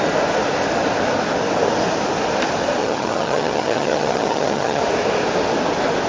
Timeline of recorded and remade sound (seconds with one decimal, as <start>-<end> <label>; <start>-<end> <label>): 0.0-2.8 recorded; 2.8-4.8 remade; 4.8-6.1 recorded